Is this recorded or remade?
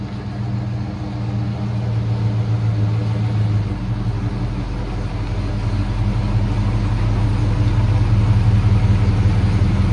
recorded